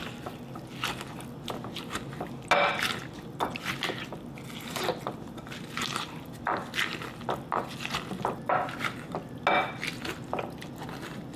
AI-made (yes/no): no